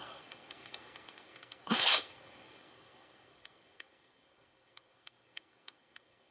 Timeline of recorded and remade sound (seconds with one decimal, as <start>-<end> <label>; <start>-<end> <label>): 0.0-6.3 remade